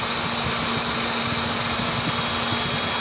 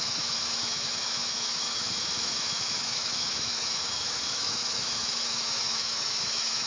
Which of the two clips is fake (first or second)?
second